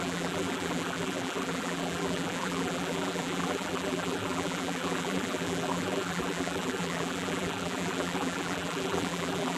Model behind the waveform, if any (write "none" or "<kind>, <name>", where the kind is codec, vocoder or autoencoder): vocoder, BigVGAN v2